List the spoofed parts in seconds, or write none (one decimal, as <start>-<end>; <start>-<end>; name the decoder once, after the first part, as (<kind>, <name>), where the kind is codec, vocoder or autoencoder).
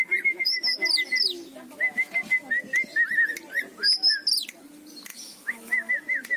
5.1-5.9 (autoencoder, DAC-VAE)